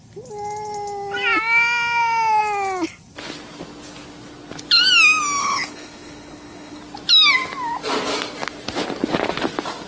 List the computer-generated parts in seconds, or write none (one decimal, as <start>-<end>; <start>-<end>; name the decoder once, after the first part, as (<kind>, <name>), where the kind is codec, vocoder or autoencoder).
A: 5.4-6.8 (codec, HILCodec)

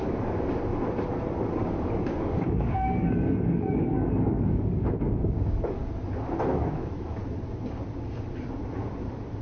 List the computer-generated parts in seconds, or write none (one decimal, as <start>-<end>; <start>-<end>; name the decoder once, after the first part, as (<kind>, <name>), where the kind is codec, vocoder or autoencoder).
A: 0.0-0.7 (codec, DAC); 1.5-5.8; 6.5-7.2

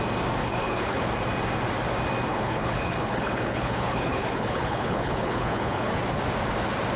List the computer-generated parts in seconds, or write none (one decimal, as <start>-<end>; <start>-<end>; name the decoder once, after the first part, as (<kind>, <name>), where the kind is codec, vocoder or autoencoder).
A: 0.4-1.0 (codec, HILCodec); 2.3-6.0